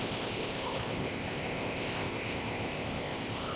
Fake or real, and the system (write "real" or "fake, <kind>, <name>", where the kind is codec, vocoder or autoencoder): fake, codec, ZipCodec